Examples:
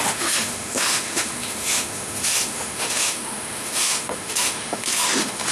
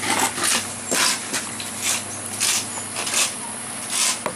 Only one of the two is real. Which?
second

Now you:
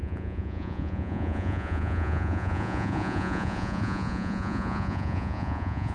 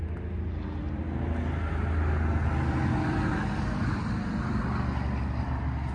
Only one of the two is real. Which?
second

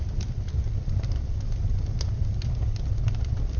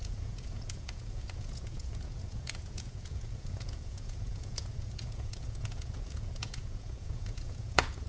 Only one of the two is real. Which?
first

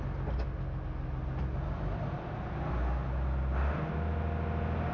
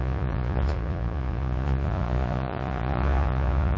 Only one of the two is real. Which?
first